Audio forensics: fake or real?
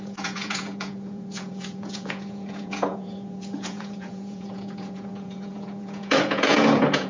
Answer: fake